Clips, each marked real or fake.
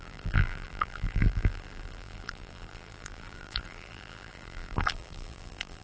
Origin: fake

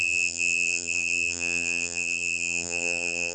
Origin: fake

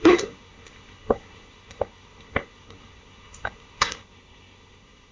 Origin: fake